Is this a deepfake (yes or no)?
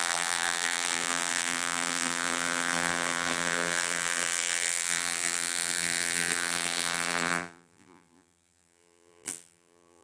yes